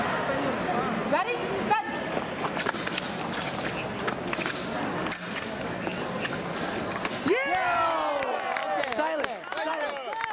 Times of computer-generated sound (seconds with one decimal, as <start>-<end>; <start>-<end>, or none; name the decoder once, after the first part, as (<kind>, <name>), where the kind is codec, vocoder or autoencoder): none